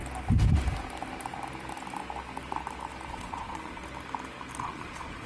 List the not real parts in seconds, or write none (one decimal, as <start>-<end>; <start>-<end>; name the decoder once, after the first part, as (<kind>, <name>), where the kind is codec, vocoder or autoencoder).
3.1-3.8 (vocoder, Vocos); 4.6-5.3